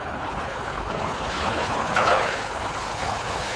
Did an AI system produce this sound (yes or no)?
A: yes